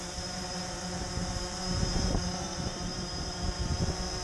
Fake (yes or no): yes